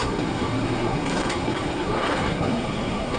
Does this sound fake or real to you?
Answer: fake